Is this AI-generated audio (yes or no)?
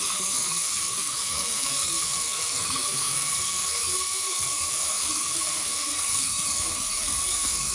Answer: yes